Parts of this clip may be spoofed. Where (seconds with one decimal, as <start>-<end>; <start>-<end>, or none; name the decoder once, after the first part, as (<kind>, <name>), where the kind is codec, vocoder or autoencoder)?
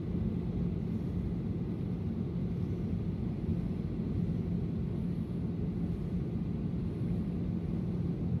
none